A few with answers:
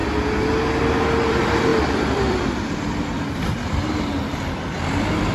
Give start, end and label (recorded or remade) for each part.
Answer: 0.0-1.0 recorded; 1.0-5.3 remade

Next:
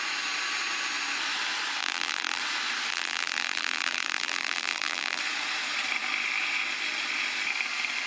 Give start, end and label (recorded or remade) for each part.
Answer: 0.0-1.8 recorded; 1.8-2.4 remade; 2.4-2.9 recorded; 2.9-5.2 remade; 5.2-8.1 recorded

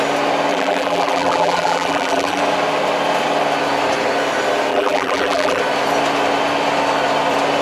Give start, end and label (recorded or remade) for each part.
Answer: 0.0-0.5 recorded; 0.5-2.4 remade; 2.4-4.7 recorded; 4.7-5.6 remade; 5.6-7.6 recorded

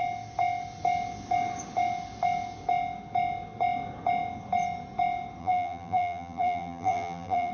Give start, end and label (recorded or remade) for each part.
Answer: 0.0-5.4 recorded; 5.4-7.5 remade

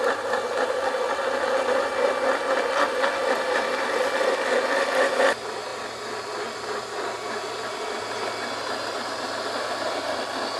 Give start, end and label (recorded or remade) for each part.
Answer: 0.0-3.2 recorded; 3.2-3.7 remade; 3.7-10.6 recorded